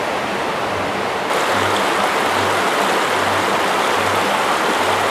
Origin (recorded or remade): recorded